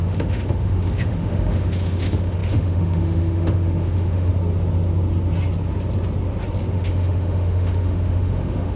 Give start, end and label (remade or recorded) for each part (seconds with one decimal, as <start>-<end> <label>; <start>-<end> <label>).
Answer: 0.0-4.3 remade; 4.3-6.7 recorded; 6.7-8.8 remade